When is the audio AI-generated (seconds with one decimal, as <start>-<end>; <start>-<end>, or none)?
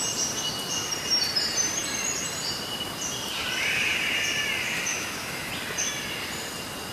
4.9-5.5